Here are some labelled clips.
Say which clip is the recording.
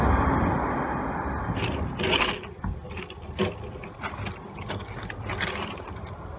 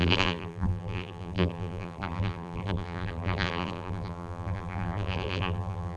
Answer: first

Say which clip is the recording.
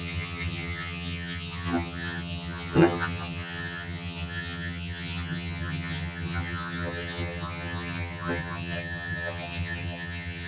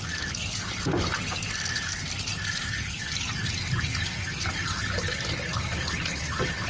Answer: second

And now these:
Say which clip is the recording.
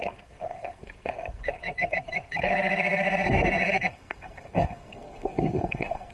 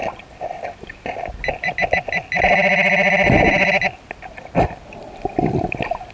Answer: second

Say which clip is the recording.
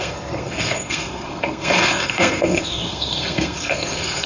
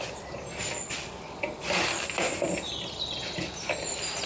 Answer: second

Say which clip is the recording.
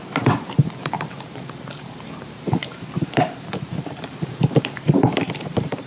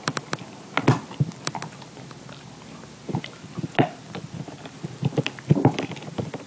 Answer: second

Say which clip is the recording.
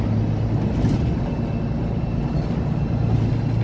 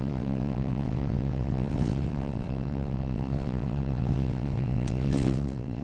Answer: first